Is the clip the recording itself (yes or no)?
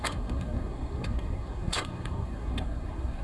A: no